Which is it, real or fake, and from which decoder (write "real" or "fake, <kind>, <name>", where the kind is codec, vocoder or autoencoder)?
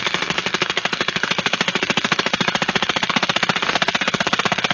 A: fake, codec, SNAC